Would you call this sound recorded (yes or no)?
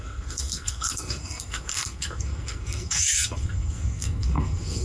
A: no